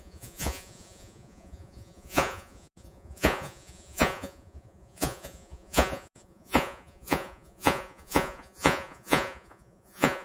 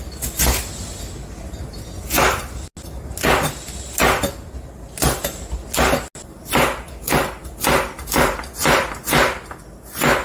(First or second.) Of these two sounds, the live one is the second